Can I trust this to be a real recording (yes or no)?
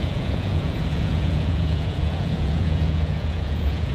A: no